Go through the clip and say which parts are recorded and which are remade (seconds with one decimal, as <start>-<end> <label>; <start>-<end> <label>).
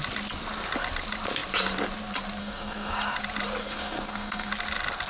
0.0-2.4 recorded; 2.4-2.9 remade; 2.9-3.6 recorded; 3.6-4.5 remade; 4.5-5.1 recorded